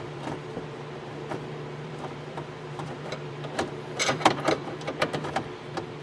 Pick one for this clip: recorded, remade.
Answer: remade